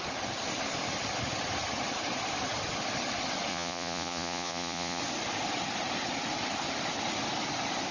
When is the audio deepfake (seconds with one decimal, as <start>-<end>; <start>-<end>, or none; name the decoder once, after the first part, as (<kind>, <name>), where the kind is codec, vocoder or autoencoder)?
3.5-5.0 (vocoder, Vocos)